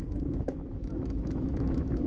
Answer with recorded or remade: remade